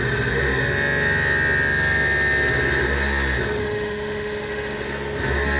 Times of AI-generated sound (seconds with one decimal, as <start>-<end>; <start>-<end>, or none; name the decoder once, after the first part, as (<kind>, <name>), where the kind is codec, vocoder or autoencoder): 3.6-4.9 (autoencoder, DAC-VAE)